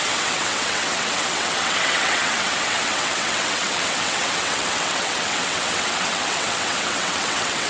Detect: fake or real fake